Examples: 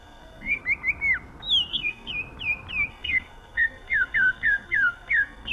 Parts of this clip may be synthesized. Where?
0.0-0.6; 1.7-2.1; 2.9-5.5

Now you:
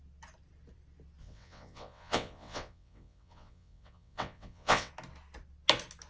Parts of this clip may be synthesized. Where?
1.2-4.9

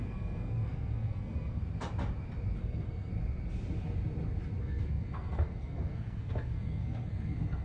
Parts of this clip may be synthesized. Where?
0.0-1.6; 2.6-3.1; 4.6-7.6

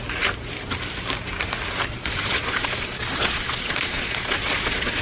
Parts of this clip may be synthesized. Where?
1.9-5.0